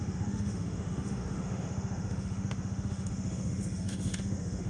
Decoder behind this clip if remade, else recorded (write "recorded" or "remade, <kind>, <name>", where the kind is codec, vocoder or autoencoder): remade, autoencoder, DAC-VAE